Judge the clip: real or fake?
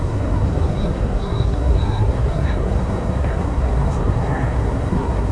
fake